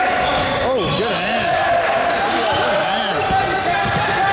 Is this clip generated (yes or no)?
no